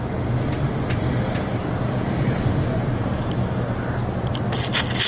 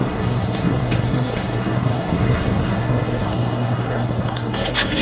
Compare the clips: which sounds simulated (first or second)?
second